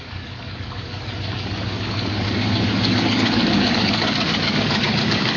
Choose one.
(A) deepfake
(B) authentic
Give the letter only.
A